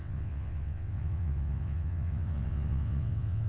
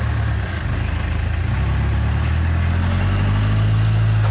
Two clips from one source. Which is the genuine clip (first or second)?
second